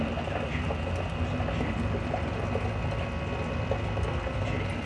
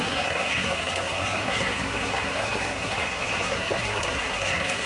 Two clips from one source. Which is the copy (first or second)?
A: second